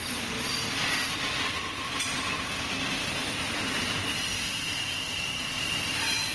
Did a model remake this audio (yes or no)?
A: no